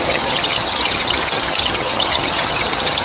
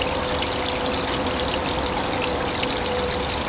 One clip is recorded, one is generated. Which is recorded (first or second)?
second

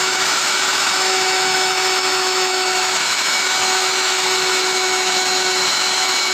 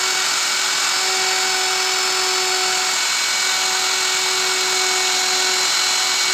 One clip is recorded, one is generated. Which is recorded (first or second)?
second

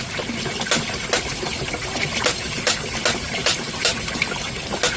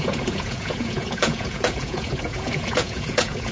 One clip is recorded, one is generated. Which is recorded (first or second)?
first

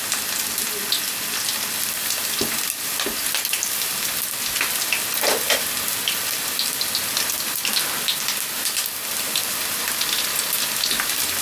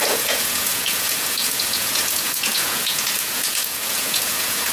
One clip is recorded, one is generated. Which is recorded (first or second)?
first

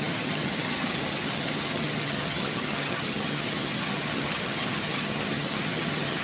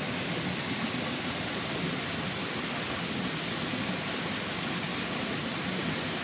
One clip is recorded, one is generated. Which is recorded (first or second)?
second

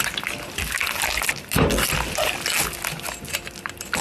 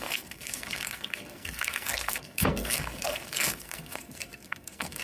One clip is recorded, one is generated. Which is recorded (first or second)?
first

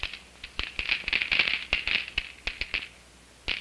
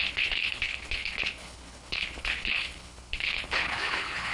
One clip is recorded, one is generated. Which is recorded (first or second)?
first